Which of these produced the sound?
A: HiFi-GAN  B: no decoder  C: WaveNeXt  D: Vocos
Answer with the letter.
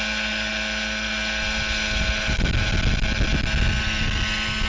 B